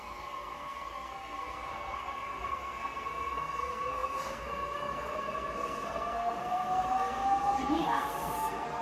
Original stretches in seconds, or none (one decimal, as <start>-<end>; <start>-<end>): none